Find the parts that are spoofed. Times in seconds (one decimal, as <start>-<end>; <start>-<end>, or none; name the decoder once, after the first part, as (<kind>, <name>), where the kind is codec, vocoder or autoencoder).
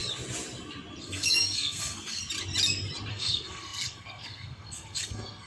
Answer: 1.0-2.2 (codec, SNAC); 3.1-5.5